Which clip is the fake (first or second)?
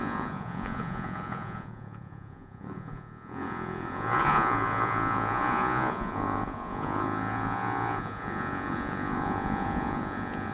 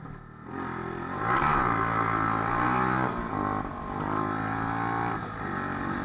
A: first